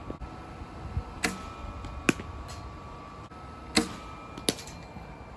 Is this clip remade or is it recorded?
recorded